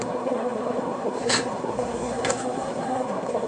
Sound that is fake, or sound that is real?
fake